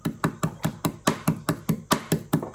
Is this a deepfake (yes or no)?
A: no